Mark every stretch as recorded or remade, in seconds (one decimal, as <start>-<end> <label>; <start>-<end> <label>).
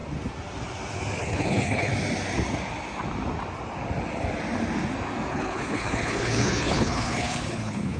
0.0-1.2 recorded; 1.2-1.9 remade; 1.9-5.3 recorded; 5.3-8.0 remade